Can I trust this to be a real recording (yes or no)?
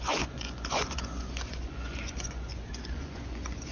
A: no